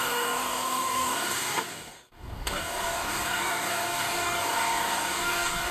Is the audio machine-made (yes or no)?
yes